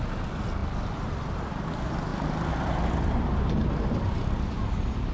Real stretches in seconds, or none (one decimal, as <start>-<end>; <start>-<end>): 0.0-5.1